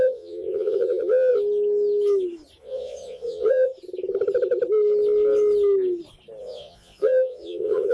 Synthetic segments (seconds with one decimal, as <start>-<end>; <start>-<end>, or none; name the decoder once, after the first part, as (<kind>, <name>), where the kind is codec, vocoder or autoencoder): 0.0-1.3 (vocoder, Vocos); 2.6-3.7; 6.4-7.9